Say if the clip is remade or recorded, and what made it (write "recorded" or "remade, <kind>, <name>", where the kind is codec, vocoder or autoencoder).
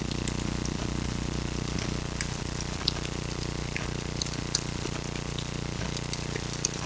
recorded